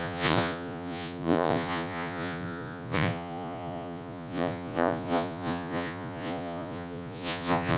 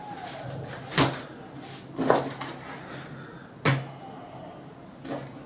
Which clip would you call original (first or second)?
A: second